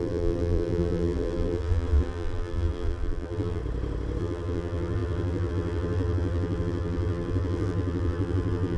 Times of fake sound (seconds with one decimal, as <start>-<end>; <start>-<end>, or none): 0.0-3.6; 4.2-8.8